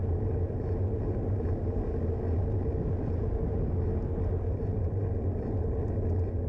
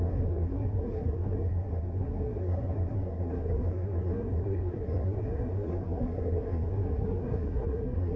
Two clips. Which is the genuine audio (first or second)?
first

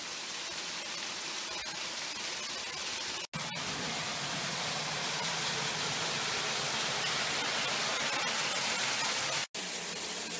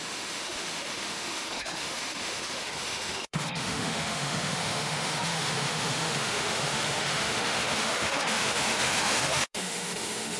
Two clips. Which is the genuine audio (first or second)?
first